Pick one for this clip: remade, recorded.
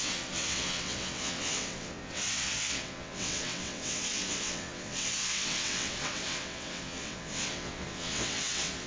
remade